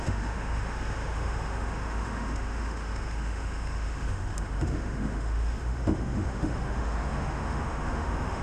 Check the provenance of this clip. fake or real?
fake